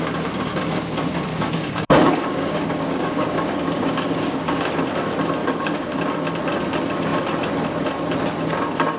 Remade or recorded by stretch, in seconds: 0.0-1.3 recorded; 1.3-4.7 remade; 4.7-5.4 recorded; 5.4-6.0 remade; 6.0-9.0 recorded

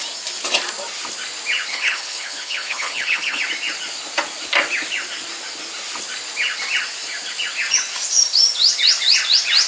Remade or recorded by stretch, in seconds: 0.0-1.7 recorded; 1.7-3.4 remade; 3.4-9.7 recorded

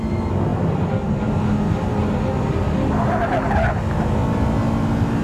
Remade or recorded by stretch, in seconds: 0.0-5.2 recorded

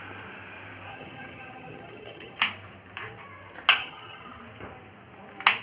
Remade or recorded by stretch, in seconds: 0.0-0.9 recorded; 0.9-2.4 remade; 2.4-3.8 recorded; 3.8-4.4 remade; 4.4-5.6 recorded

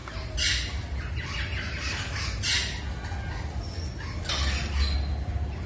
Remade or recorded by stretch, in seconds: 0.0-5.7 recorded